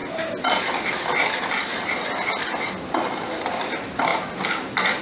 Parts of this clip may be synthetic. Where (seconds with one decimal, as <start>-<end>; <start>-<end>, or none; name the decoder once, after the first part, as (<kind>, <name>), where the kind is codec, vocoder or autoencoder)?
none